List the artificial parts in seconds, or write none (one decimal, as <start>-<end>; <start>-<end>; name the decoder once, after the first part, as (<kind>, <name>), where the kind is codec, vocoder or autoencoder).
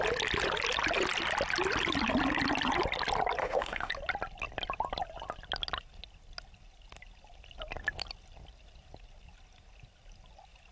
3.4-3.9 (autoencoder, DAC-VAE)